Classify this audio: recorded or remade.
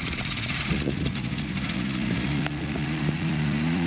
remade